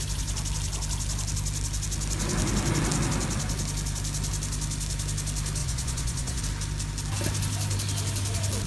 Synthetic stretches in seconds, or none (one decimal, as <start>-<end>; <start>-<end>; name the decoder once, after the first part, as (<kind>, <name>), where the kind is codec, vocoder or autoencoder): 5.6-6.4 (vocoder, Vocos)